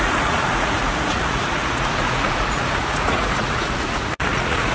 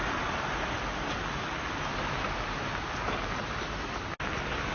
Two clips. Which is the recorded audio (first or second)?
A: second